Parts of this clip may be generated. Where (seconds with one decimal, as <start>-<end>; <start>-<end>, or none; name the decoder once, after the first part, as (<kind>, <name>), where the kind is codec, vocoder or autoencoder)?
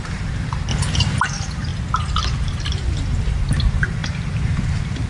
0.0-1.7 (vocoder, BigVGAN v2); 2.7-5.1